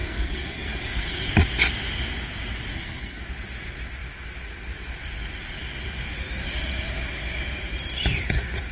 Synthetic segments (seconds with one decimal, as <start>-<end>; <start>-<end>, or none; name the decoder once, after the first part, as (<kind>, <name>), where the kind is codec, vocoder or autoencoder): 0.0-1.3 (codec, SNAC); 2.7-3.2